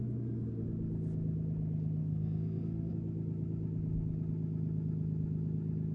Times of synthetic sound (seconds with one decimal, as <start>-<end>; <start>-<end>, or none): 2.0-2.9